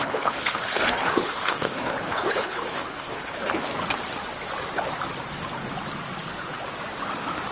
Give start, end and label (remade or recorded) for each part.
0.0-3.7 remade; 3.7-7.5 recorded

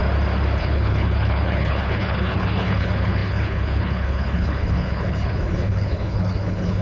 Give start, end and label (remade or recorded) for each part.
0.0-0.6 recorded; 0.6-6.8 remade

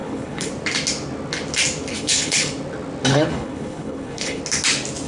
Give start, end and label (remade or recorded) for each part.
0.0-0.5 remade; 0.5-1.9 recorded; 1.9-2.5 remade; 2.5-3.1 recorded; 3.1-4.4 remade; 4.4-5.1 recorded

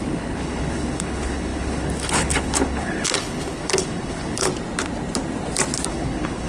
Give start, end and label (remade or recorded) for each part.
0.0-4.5 remade; 4.5-5.9 recorded; 5.9-6.5 remade

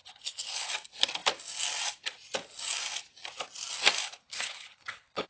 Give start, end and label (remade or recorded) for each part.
0.0-0.7 remade; 0.7-4.0 recorded; 4.0-5.3 remade

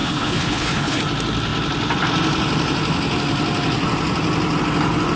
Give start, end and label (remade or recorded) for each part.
0.0-1.0 remade; 1.0-5.2 recorded